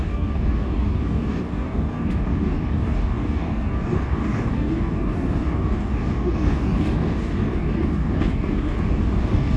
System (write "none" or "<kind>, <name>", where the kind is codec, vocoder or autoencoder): codec, DAC